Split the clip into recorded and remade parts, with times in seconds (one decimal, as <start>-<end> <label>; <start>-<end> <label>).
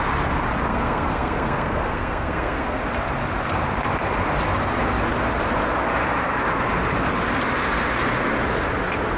0.0-0.7 recorded; 0.7-2.8 remade; 2.8-9.2 recorded